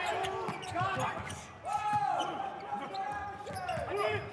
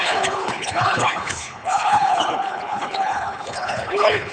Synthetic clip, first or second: second